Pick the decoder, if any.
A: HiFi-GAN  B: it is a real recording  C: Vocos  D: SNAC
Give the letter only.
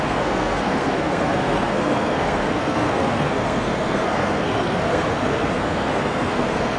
D